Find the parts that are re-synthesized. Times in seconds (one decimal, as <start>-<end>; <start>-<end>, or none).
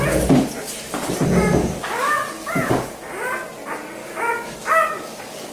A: 1.6-3.1; 4.0-5.5